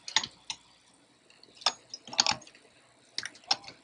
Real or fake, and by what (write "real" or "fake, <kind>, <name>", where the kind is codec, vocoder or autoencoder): real